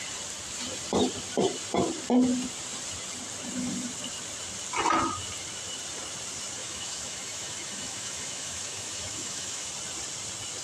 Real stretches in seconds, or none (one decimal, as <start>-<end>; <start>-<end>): 0.0-6.6; 9.7-10.6